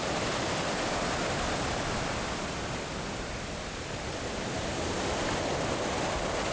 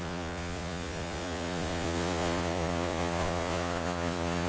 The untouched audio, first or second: first